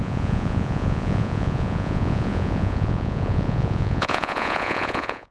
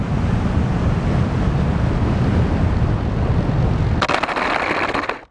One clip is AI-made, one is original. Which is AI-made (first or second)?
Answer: first